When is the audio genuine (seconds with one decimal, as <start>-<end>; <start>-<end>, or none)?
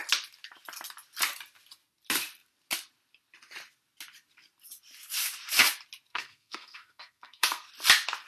0.0-6.1; 7.7-8.3